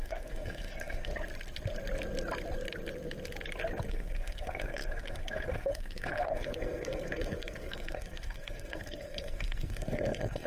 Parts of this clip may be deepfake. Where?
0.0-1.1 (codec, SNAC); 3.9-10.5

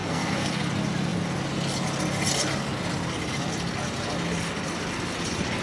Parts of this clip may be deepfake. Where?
0.0-0.6 (codec, SNAC)

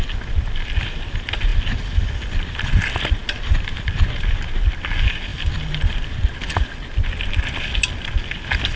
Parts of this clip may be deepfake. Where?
none

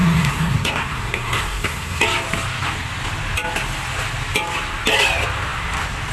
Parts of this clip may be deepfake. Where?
0.0-2.0 (codec, SNAC)

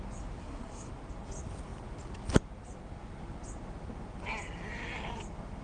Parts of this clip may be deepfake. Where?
0.4-0.9 (codec, SNAC)

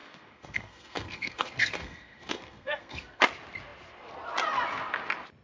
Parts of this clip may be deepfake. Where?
0.0-3.2 (codec, SNAC)

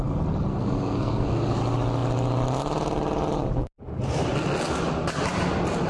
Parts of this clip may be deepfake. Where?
0.5-1.6 (codec, SNAC)

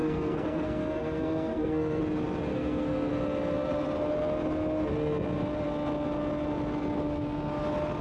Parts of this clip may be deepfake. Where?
0.0-2.0 (codec, SNAC); 2.5-3.1